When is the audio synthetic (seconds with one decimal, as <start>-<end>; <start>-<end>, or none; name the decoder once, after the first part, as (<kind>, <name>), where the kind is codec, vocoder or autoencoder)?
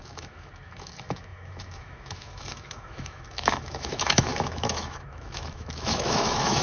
0.0-6.6 (autoencoder, DAC-VAE)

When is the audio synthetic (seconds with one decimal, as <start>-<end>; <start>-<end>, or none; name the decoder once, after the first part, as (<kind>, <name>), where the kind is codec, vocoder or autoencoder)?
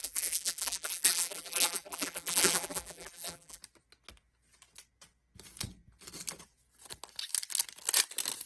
0.0-3.6 (vocoder, BigVGAN v2)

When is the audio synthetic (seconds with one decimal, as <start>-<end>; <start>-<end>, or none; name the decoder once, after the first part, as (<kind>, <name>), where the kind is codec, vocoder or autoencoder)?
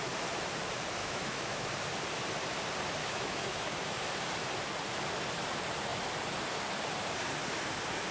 1.0-1.7 (autoencoder, DAC-VAE); 3.0-4.0